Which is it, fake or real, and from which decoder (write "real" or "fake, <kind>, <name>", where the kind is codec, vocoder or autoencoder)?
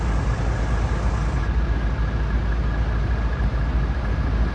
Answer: real